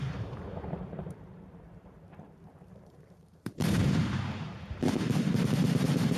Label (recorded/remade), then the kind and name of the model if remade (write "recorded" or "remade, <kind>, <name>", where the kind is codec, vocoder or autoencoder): remade, vocoder, BigVGAN v2